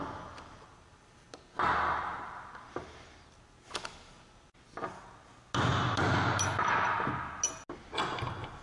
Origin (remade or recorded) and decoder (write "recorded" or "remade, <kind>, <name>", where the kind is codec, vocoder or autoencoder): recorded